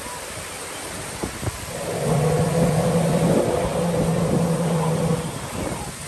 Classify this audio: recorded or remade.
recorded